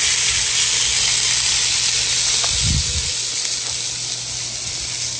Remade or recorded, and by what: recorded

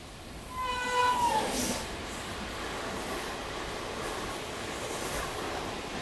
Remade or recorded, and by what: recorded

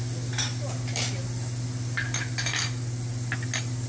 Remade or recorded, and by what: recorded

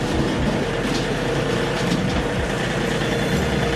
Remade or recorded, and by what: recorded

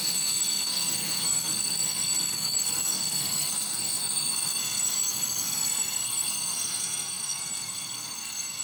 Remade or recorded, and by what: remade, codec, SNAC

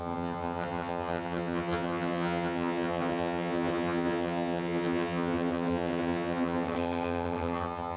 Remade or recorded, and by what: remade, vocoder, HiFi-GAN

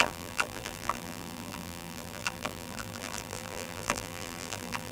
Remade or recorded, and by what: remade, vocoder, BigVGAN v2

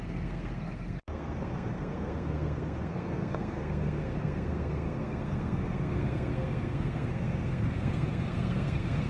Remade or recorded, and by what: remade, codec, SNAC